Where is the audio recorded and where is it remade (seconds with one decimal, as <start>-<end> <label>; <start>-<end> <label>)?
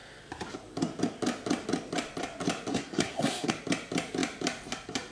0.0-2.7 recorded; 2.7-3.5 remade; 3.5-5.1 recorded